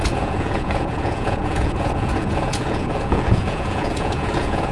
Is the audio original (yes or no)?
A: no